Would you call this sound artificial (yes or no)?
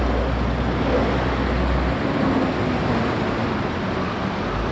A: no